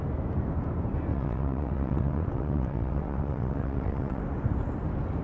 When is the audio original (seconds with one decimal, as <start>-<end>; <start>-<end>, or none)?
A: 0.0-1.1; 4.2-5.2